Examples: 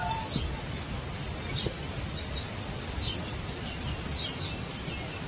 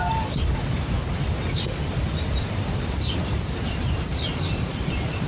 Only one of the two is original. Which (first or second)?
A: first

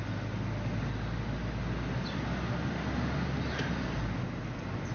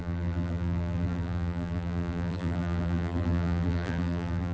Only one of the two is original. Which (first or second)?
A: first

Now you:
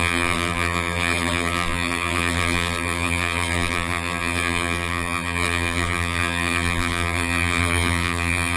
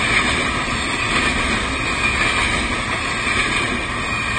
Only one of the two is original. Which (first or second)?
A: second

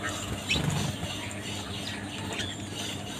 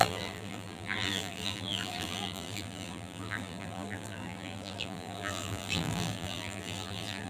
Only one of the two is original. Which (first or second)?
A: first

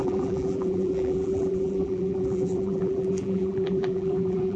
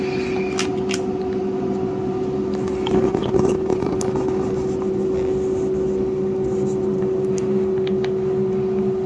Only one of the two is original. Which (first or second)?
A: second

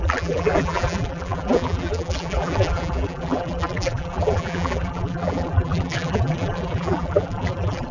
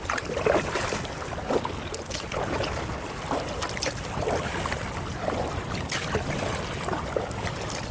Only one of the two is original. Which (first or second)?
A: second